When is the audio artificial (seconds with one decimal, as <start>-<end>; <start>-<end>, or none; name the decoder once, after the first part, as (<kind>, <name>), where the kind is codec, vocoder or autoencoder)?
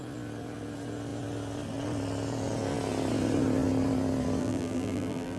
4.4-5.4 (vocoder, BigVGAN v2)